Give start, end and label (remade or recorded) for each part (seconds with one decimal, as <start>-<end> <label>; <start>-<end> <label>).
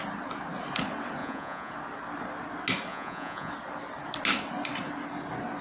0.0-1.2 recorded; 1.2-1.7 remade; 1.7-2.9 recorded; 2.9-3.5 remade; 3.5-5.6 recorded